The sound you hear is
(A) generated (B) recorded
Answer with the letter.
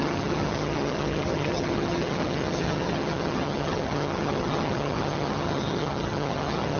A